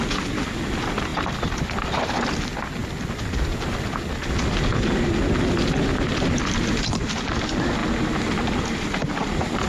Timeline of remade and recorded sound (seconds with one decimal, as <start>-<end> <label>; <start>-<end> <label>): 0.0-1.1 recorded; 1.1-2.2 remade; 2.2-9.7 recorded

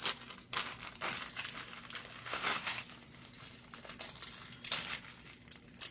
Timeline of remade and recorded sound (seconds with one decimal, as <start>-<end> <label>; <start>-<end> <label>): 0.0-2.2 recorded; 2.2-2.8 remade; 2.8-5.9 recorded

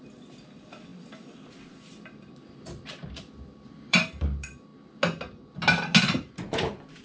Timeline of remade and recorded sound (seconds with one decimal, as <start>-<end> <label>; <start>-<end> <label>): 0.0-0.9 remade; 0.9-1.5 recorded; 1.5-4.7 remade; 4.7-6.0 recorded; 6.0-7.0 remade

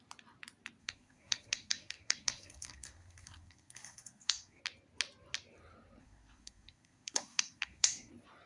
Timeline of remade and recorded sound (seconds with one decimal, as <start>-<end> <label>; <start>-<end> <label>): 0.0-0.8 recorded; 0.8-4.6 remade; 4.6-6.0 recorded; 6.0-8.1 remade; 8.1-8.5 recorded

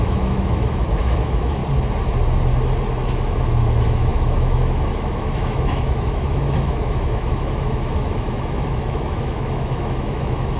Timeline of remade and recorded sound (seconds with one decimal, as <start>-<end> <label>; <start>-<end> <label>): 0.0-1.6 remade; 1.6-2.9 recorded; 2.9-10.6 remade

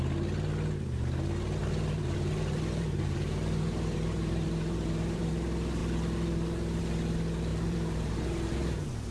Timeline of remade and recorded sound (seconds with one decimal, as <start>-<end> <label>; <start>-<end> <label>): 0.0-1.6 recorded; 1.6-5.3 remade; 5.3-7.5 recorded; 7.5-9.1 remade